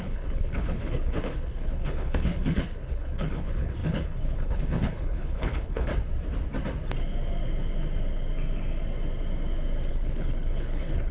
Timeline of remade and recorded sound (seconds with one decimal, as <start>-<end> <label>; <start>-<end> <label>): 0.0-5.9 remade; 5.9-9.9 recorded; 9.9-11.1 remade